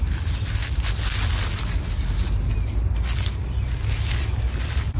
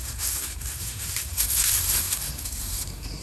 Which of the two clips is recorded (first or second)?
first